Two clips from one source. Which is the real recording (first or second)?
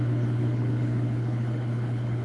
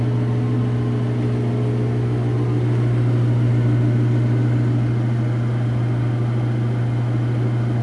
second